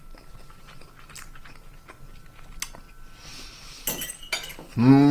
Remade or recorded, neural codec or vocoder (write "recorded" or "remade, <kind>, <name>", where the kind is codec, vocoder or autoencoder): recorded